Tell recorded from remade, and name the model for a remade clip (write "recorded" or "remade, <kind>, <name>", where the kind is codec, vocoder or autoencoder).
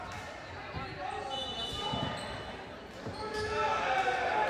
recorded